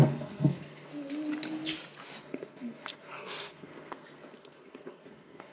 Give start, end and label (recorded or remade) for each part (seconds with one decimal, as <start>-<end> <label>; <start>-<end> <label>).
0.0-0.9 remade; 0.9-2.2 recorded; 2.2-5.5 remade